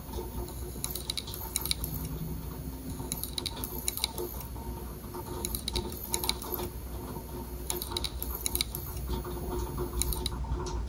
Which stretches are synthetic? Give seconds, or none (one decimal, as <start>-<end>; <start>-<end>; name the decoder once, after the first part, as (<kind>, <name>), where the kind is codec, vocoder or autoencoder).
none